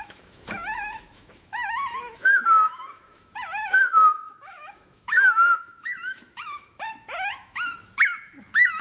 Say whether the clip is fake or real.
fake